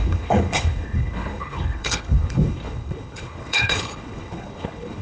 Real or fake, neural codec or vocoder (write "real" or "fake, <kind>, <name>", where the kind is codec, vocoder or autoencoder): fake, codec, HILCodec